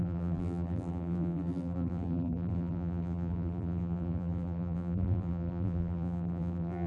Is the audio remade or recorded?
remade